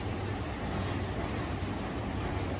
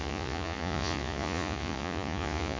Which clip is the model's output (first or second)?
second